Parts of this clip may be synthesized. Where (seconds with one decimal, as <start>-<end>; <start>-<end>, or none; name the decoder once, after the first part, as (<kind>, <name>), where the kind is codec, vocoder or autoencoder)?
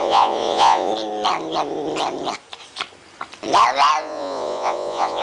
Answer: 0.0-0.9 (vocoder, Vocos); 4.0-5.2